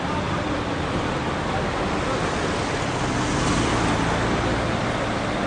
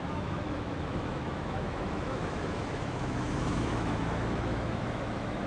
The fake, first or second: second